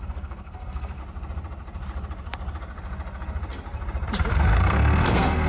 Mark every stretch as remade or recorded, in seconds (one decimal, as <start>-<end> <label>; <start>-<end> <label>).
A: 0.0-1.0 remade; 1.0-4.3 recorded; 4.3-5.5 remade